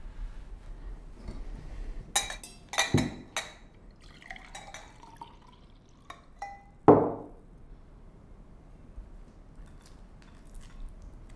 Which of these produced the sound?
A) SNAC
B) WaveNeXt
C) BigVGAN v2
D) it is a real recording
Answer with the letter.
D